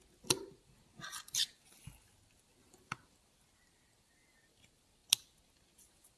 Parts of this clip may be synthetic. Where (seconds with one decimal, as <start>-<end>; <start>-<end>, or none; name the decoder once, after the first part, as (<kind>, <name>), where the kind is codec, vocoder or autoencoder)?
none